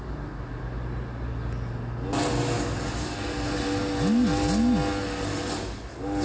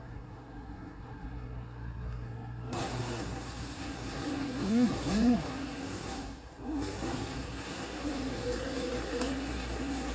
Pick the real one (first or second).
first